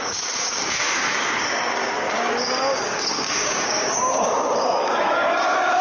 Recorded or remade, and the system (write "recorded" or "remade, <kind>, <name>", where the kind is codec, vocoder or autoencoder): remade, codec, DAC